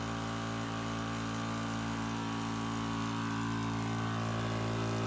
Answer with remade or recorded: recorded